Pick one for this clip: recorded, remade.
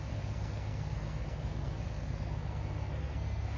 remade